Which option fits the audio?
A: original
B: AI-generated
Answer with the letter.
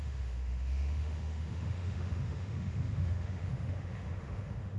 B